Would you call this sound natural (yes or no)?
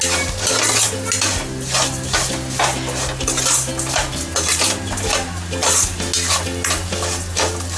yes